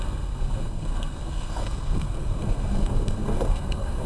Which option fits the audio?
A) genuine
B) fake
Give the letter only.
B